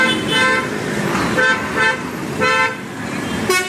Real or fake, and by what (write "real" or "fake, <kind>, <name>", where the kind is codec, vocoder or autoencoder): real